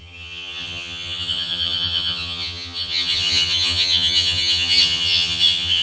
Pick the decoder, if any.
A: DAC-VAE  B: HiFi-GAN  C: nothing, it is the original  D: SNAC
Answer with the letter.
B